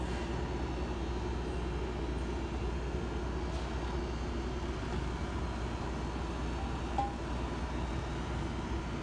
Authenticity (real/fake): real